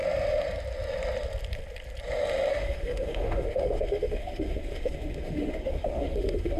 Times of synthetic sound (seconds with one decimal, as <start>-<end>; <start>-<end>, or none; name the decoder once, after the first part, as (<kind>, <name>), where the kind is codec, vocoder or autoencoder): 2.5-6.6 (autoencoder, DAC-VAE)